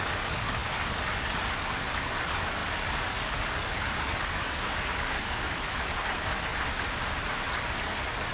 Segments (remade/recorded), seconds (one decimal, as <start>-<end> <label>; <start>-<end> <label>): 0.0-6.5 remade; 6.5-7.5 recorded; 7.5-8.3 remade